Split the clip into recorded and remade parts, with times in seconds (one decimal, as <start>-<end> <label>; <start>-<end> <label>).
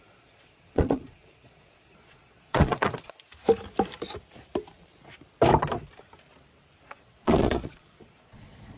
0.0-3.3 remade; 3.3-6.8 recorded; 6.8-8.8 remade